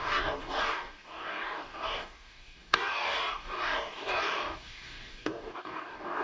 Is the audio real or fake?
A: fake